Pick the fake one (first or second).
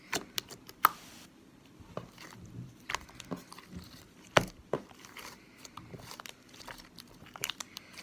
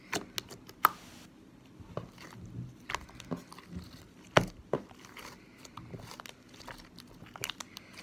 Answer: first